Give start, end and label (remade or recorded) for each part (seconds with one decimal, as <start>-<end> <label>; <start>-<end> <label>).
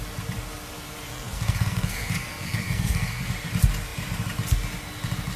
0.0-1.1 recorded; 1.1-3.3 remade; 3.3-5.4 recorded